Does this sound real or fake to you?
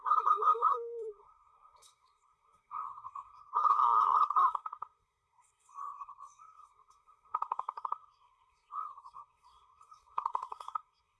fake